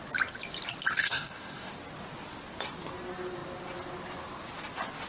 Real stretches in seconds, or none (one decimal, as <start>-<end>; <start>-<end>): 0.0-1.0; 1.7-5.1